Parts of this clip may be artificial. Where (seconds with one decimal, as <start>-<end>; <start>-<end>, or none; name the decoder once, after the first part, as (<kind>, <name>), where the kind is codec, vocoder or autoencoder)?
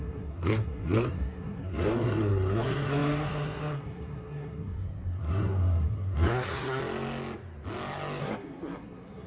0.0-6.8 (codec, SNAC); 8.2-9.3